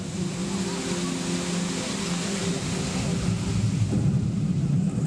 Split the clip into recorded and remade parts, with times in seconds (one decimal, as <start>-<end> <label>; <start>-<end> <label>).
0.0-0.4 remade; 0.4-3.5 recorded; 3.5-5.1 remade